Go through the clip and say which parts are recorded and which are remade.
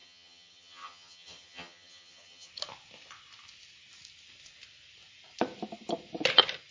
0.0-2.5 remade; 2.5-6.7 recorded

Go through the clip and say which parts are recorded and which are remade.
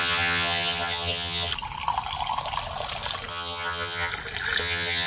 0.0-1.5 remade; 1.5-3.3 recorded; 3.3-4.1 remade; 4.1-4.6 recorded; 4.6-5.1 remade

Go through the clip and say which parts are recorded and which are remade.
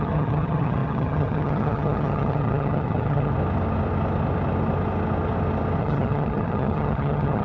0.0-3.3 remade; 3.3-5.8 recorded; 5.8-7.4 remade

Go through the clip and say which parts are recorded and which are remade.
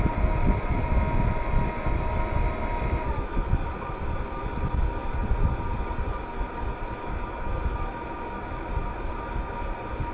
0.0-10.1 recorded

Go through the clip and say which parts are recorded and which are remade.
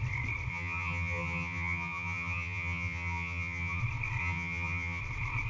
0.0-0.5 recorded; 0.5-3.8 remade; 3.8-4.2 recorded; 4.2-5.0 remade; 5.0-5.5 recorded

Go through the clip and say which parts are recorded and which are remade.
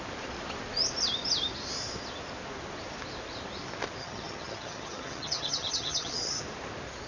0.0-4.0 recorded; 4.0-6.4 remade; 6.4-7.1 recorded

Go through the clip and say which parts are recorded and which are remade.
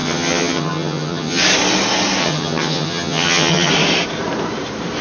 0.0-1.4 remade; 1.4-2.2 recorded; 2.2-3.7 remade; 3.7-5.0 recorded